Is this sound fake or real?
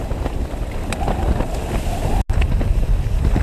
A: real